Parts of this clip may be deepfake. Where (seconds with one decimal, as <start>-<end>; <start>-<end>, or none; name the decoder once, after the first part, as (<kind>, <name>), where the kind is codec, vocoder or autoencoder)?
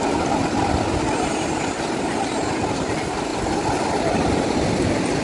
none